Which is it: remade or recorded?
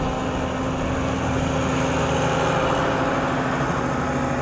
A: recorded